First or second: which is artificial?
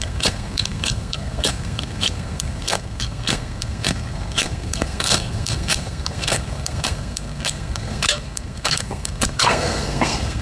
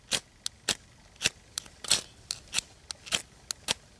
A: first